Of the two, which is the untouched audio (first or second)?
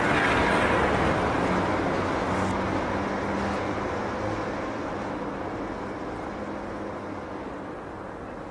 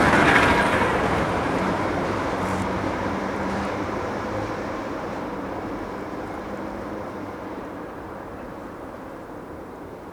first